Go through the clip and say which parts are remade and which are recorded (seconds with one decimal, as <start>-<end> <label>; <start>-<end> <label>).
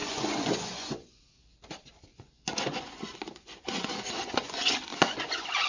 0.0-1.2 remade; 1.2-2.1 recorded; 2.1-5.7 remade